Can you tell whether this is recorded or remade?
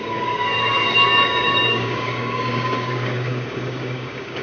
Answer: remade